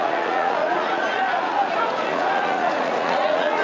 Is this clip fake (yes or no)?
yes